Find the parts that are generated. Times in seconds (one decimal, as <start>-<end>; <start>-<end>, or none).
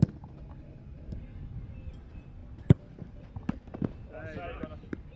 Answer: none